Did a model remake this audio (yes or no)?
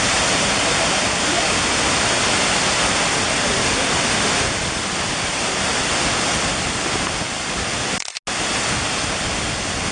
no